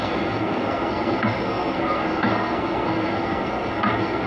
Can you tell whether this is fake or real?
fake